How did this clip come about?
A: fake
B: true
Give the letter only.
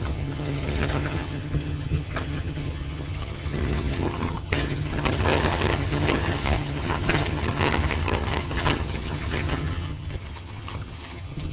A